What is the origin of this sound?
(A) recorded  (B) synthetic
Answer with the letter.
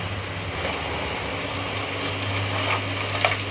A